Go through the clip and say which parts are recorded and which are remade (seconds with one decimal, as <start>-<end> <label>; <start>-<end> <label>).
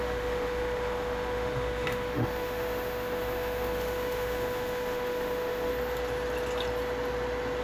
0.0-5.7 remade; 5.7-7.6 recorded